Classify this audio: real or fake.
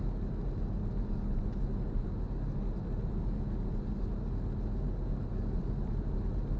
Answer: real